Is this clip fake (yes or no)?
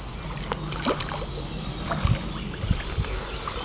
no